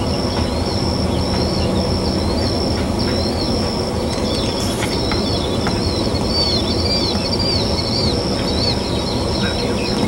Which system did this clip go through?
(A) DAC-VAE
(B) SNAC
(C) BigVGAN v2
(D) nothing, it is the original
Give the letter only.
D